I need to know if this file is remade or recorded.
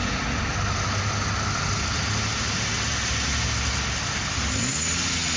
recorded